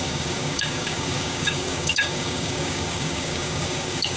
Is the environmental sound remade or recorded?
remade